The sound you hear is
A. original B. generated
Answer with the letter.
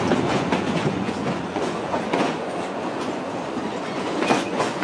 B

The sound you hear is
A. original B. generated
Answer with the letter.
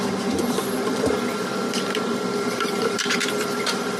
B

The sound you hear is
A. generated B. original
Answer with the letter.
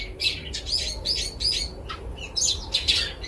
B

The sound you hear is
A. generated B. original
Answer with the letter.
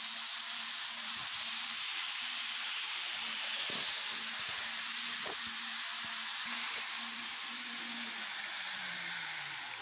A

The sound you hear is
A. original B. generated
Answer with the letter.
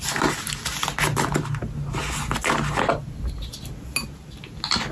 A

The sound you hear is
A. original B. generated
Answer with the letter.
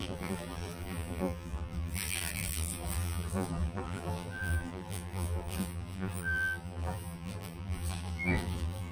B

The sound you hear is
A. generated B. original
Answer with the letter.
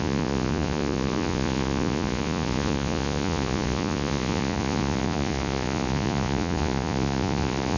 A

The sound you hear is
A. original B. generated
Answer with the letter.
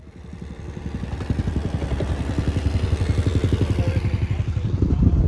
A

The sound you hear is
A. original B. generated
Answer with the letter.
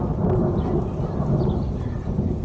A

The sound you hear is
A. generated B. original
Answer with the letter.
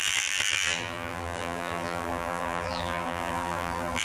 A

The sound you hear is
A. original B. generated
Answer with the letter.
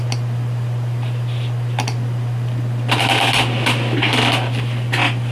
A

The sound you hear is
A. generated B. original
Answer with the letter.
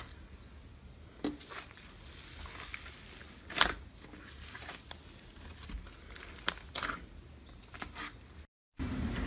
B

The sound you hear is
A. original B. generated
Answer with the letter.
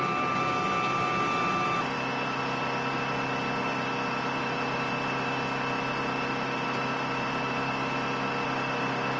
A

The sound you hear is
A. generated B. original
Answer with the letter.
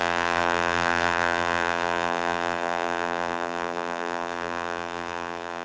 A